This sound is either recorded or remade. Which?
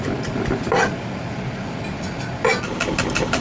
recorded